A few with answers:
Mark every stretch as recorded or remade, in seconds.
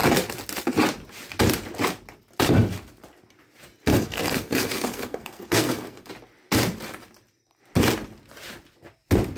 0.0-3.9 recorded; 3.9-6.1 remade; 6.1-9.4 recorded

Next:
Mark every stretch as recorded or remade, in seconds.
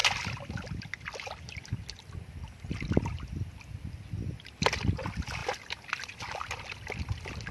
0.0-7.5 recorded